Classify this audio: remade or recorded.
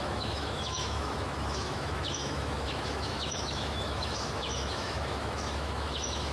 remade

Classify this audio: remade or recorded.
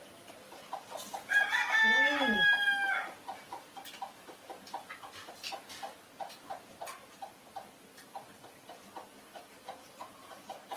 recorded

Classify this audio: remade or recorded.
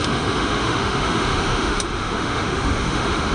remade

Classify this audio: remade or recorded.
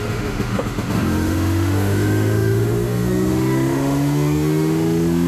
remade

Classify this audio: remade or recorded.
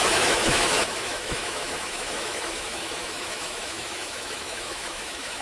remade